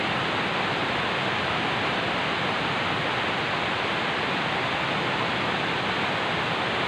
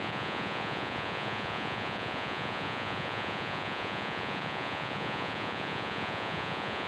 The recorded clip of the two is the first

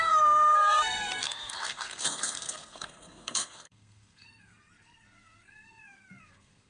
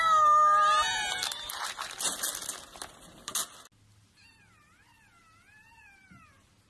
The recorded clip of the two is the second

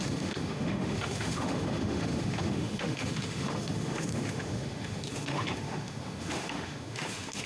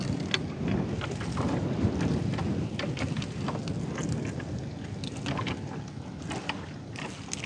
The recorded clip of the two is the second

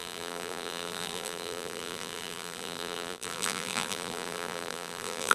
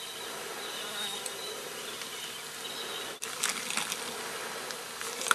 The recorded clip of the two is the second